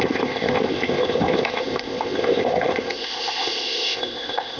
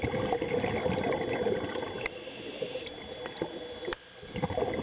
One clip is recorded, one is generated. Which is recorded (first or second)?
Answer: second